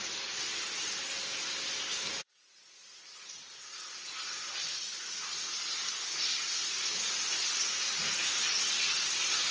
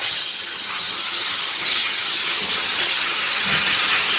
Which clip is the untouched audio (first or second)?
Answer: first